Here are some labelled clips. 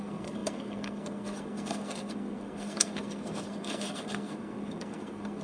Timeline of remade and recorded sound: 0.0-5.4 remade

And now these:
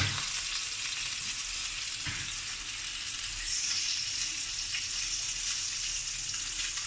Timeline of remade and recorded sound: 0.0-6.9 recorded